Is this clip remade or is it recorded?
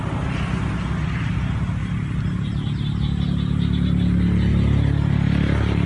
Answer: recorded